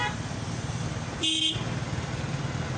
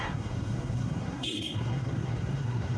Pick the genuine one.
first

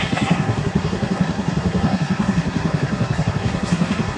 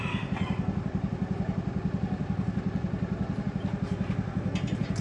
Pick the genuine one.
second